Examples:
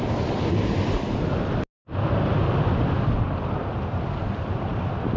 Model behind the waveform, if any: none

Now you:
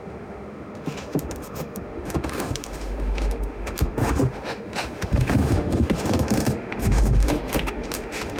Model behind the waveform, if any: autoencoder, DAC-VAE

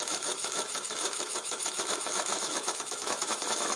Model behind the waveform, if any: autoencoder, DAC-VAE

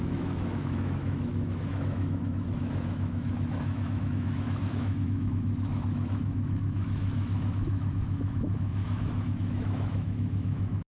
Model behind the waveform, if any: autoencoder, DAC-VAE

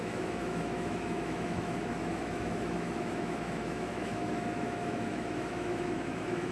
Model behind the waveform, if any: autoencoder, DAC-VAE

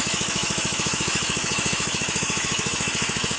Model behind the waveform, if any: autoencoder, DAC-VAE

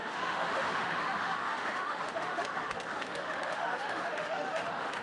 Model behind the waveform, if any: autoencoder, DAC-VAE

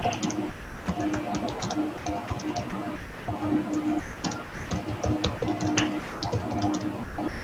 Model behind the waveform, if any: none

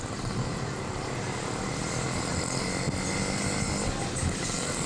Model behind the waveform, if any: none